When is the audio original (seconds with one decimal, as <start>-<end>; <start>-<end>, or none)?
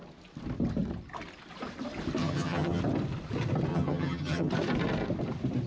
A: 0.0-2.2; 2.8-3.7; 4.5-5.7